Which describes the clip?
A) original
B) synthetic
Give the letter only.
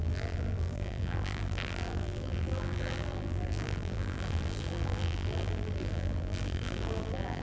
B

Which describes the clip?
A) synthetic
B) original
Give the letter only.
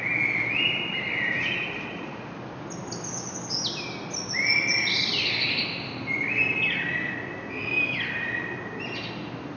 B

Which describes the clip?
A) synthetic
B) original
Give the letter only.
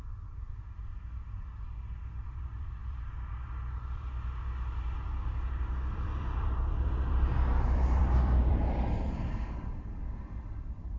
A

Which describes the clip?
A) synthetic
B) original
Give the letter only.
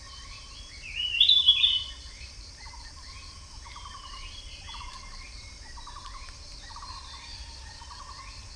A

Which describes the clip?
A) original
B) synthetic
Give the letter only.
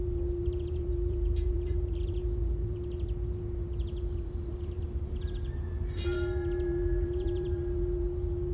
B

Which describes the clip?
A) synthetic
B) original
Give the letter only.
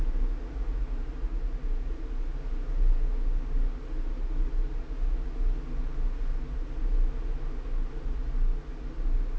B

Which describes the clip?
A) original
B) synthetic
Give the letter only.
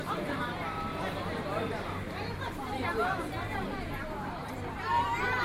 B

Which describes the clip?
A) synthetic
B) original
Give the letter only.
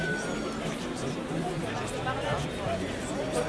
A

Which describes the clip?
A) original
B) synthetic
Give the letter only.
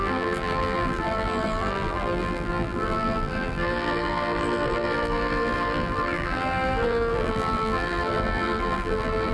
B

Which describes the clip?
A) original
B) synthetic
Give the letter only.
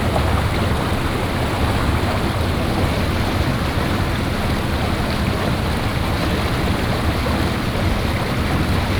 A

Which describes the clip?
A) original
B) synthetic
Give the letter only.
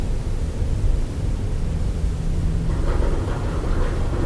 A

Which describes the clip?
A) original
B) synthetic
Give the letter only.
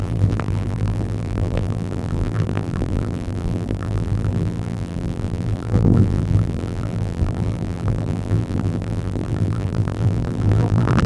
B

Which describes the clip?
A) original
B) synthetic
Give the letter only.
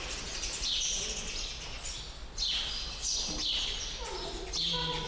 A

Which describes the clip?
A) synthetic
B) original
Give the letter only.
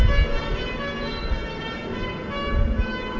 B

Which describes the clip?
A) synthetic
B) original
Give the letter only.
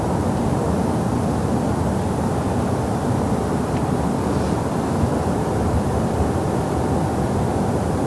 B